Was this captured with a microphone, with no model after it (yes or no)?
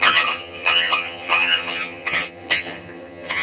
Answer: no